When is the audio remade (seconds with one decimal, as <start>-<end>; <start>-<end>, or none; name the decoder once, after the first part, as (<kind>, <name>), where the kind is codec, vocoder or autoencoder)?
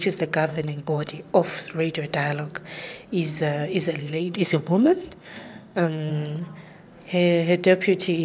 0.5-1.1 (codec, SNAC); 4.0-6.1